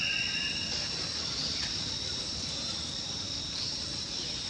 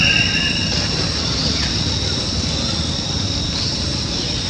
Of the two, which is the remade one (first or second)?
second